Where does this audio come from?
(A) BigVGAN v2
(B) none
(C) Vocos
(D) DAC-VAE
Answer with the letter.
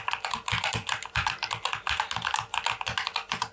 B